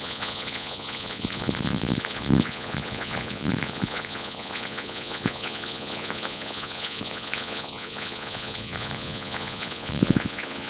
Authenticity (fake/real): fake